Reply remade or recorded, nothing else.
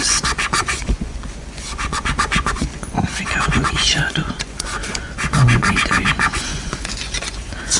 remade